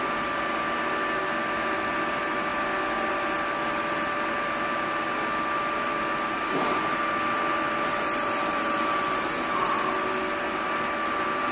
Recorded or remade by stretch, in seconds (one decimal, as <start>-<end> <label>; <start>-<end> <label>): 0.0-2.5 recorded; 2.5-4.3 remade; 4.3-11.5 recorded